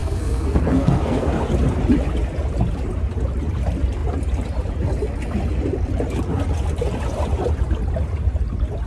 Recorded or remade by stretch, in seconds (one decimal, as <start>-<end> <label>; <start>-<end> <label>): 0.0-1.4 remade; 1.4-8.9 recorded